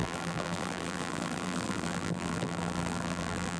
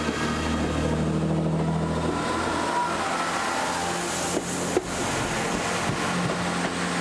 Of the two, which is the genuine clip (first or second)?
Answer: second